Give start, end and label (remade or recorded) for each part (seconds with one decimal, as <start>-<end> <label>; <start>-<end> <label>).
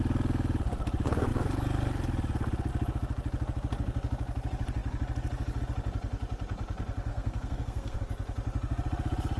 0.0-7.1 recorded; 7.1-8.0 remade; 8.0-9.4 recorded